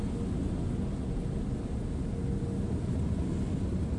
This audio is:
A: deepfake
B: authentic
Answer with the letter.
B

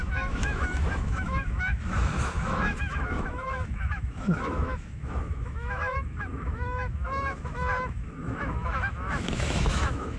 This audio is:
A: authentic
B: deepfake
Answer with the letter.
B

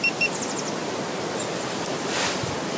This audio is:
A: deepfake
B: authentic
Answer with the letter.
B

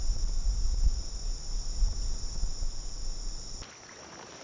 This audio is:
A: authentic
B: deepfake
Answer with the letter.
A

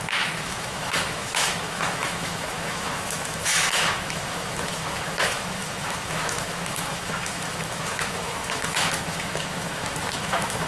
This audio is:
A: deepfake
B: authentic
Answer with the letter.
A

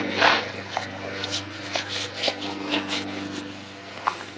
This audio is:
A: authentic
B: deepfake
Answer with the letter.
B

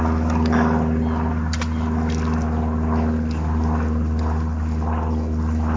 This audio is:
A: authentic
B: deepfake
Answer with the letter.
A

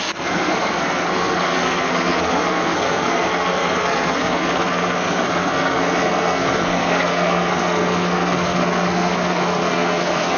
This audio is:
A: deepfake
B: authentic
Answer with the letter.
A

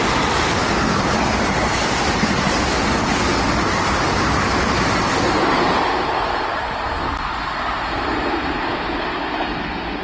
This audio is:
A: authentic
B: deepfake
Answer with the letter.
A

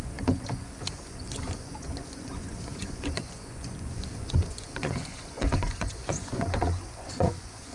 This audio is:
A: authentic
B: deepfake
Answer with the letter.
B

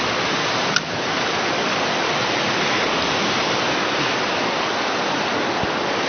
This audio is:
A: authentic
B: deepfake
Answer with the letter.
A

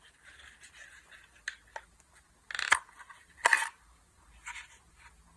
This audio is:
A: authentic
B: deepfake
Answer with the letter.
A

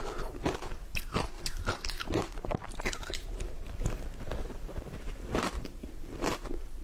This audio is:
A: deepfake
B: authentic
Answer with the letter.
A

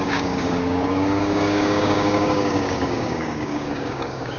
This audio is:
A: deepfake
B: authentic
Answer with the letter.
A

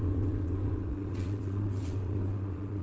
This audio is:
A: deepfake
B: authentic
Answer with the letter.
A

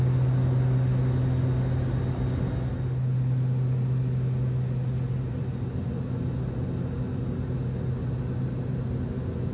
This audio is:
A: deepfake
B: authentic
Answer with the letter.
B